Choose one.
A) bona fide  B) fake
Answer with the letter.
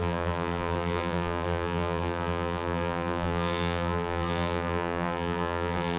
B